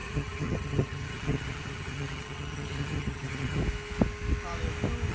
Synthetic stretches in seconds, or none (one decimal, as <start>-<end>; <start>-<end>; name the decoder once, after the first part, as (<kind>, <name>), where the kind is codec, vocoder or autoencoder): 0.0-3.6 (vocoder, HiFi-GAN)